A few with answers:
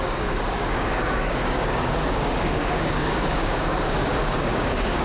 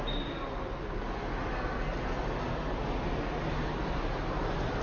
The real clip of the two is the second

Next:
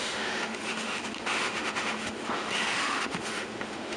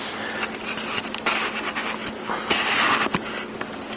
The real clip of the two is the second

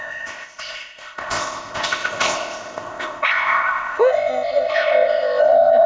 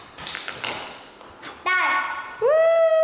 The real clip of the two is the second